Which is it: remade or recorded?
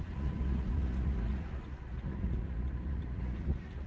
remade